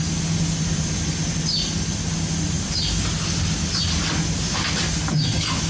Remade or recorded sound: recorded